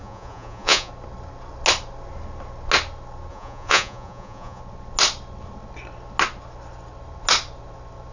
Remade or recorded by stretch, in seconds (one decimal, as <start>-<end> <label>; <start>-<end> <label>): 0.0-0.9 remade; 0.9-3.3 recorded; 3.3-4.6 remade; 4.6-8.1 recorded